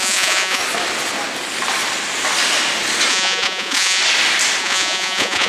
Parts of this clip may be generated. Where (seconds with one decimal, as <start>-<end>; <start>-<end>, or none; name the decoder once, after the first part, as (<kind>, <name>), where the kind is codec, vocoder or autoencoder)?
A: 0.0-0.6 (vocoder, Vocos); 3.1-4.0; 4.6-5.5